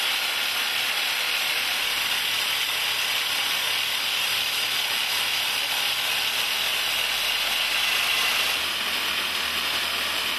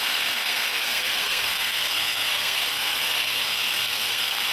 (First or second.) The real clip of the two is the first